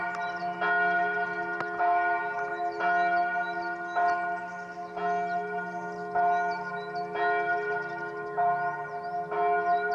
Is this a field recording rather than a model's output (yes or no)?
yes